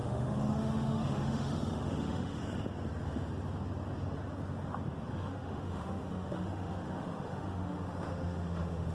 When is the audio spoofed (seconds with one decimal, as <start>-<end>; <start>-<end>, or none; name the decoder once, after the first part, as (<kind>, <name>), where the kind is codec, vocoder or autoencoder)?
0.0-2.4 (autoencoder, DAC-VAE); 5.1-8.9